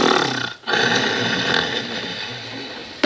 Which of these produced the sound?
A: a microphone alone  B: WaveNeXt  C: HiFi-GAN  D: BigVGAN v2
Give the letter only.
A